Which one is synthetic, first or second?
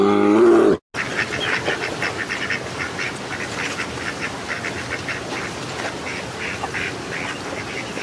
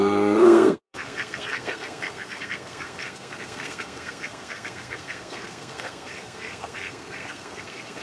second